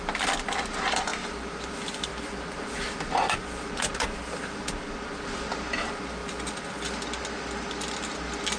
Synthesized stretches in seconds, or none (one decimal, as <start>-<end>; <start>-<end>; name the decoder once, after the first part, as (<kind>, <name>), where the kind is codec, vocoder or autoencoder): none

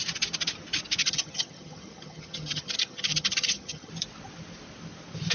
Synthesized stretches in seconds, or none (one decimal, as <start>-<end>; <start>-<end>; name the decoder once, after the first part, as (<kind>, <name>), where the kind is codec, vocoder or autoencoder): 1.0-3.9 (vocoder, HiFi-GAN)

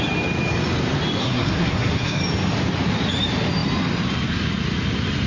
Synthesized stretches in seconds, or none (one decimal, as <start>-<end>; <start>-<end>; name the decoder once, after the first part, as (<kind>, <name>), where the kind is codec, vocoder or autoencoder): 1.2-2.2 (codec, SNAC)

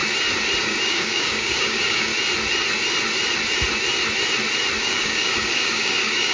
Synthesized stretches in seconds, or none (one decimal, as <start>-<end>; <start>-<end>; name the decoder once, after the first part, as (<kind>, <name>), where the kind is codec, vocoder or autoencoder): 0.6-2.1 (codec, DAC); 4.8-6.3

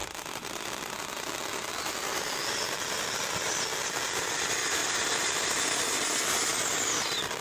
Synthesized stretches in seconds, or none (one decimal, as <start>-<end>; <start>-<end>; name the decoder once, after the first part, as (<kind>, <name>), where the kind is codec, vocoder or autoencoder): none

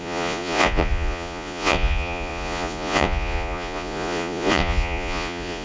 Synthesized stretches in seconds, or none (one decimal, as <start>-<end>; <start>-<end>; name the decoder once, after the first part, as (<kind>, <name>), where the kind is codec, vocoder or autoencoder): 0.0-5.6 (vocoder, Vocos)

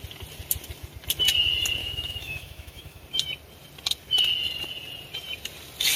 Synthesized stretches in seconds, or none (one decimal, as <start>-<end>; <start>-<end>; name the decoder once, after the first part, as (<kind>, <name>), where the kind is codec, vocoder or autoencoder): 1.8-3.0 (autoencoder, DAC-VAE)

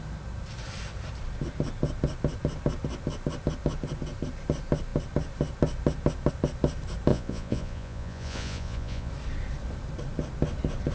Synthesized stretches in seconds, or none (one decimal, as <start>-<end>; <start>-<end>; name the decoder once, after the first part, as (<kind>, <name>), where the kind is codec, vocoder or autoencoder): 7.1-9.1 (vocoder, Vocos)